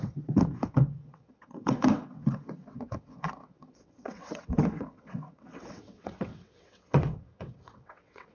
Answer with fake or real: fake